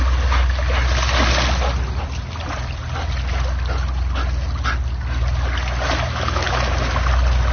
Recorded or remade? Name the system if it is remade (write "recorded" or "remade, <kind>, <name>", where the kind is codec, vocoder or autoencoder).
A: recorded